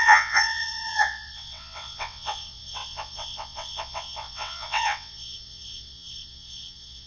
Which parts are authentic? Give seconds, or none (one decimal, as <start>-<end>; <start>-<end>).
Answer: none